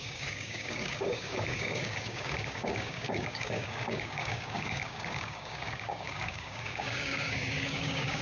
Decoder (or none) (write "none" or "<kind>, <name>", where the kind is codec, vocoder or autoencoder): codec, DAC